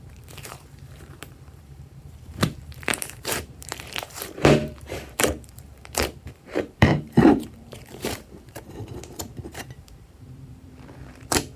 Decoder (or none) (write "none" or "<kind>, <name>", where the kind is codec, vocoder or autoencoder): vocoder, BigVGAN v2